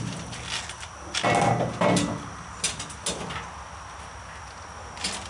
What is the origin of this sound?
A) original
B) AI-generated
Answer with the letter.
A